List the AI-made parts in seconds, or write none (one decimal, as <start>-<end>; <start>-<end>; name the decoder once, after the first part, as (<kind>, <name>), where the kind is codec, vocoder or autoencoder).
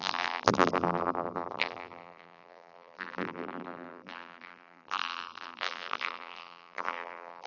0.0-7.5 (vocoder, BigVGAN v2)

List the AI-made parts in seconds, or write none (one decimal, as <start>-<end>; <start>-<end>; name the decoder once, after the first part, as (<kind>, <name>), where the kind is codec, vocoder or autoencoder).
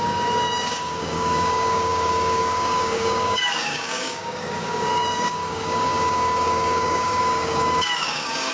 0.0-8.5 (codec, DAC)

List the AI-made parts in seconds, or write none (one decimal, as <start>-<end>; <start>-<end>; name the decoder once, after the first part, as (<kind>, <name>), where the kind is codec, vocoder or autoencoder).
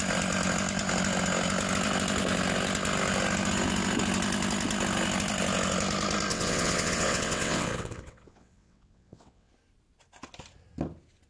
6.3-9.5 (vocoder, WaveNeXt)